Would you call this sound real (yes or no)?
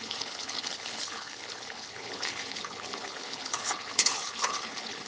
no